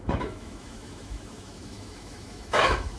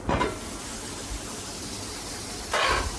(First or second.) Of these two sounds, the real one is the second